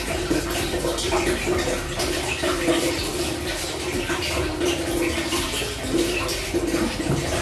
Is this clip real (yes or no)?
yes